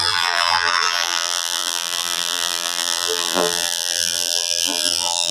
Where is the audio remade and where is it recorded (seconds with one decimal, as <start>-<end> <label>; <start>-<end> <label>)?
0.0-5.3 remade